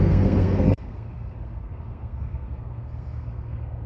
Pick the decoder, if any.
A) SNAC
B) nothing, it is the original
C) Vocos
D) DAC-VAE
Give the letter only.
A